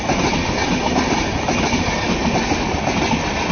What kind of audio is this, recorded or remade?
recorded